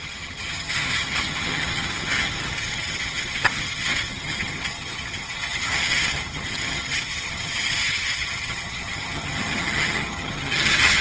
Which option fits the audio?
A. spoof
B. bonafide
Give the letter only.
A